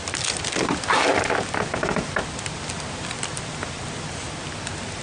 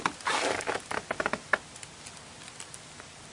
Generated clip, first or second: first